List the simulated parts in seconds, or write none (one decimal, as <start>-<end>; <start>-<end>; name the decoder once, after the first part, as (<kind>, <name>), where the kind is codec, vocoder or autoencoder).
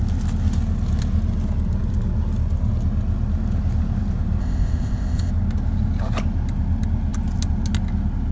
4.4-5.3 (codec, ZipCodec)